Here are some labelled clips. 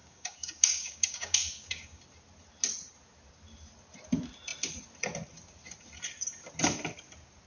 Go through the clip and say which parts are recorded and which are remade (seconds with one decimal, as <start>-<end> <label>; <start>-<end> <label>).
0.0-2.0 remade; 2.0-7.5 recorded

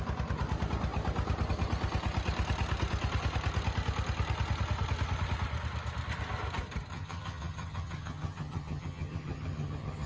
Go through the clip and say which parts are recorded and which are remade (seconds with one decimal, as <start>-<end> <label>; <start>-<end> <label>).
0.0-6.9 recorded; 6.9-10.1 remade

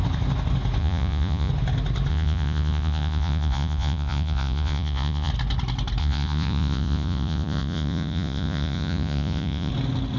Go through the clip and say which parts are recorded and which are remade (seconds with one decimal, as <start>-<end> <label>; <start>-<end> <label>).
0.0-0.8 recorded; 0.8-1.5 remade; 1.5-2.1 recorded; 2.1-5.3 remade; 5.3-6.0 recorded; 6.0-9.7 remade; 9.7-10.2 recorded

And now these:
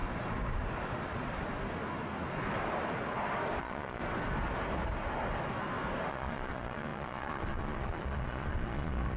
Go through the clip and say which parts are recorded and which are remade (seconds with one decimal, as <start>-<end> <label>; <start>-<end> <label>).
0.0-3.6 recorded; 3.6-4.0 remade; 4.0-6.1 recorded; 6.1-9.2 remade

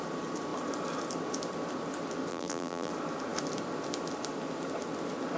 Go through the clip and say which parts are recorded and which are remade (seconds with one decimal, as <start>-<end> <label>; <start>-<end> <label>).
0.0-2.3 recorded; 2.3-2.9 remade; 2.9-5.4 recorded